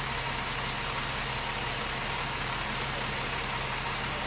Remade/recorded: recorded